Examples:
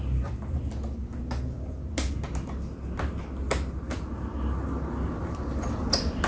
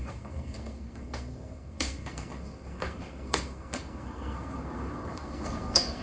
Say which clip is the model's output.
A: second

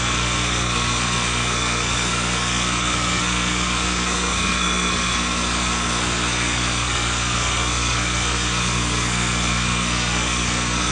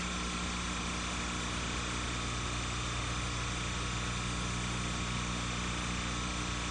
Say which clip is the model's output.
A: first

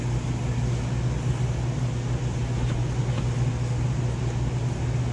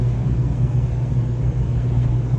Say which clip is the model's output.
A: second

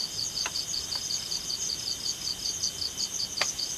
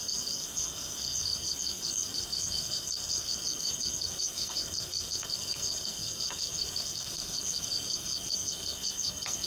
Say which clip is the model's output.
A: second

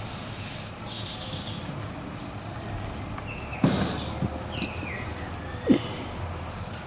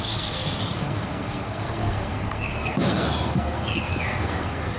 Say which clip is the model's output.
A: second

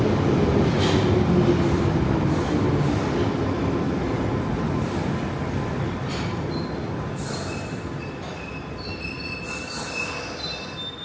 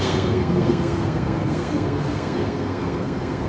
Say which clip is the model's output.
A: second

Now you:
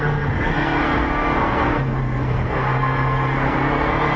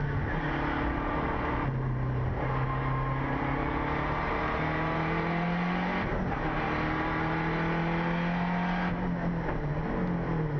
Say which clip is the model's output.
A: first